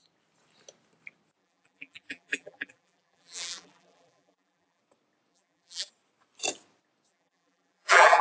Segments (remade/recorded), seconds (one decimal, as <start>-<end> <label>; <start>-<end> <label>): 0.0-1.4 recorded; 1.4-4.8 remade; 4.8-5.3 recorded; 5.3-5.9 remade; 5.9-7.1 recorded; 7.1-8.2 remade